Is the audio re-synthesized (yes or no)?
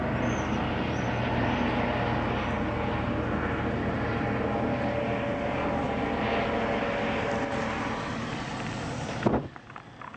no